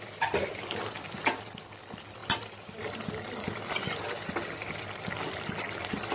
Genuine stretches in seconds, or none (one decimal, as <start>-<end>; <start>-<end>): 0.0-6.1